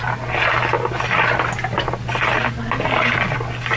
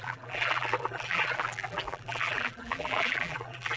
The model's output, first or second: second